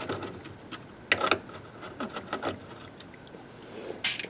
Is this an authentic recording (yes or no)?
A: yes